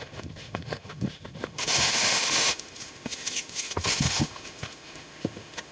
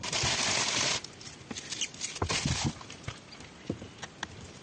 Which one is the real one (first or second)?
second